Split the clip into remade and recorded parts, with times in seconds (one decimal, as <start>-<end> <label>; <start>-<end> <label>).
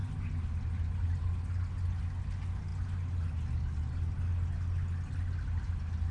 0.0-6.1 recorded